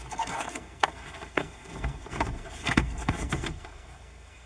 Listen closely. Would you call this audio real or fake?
fake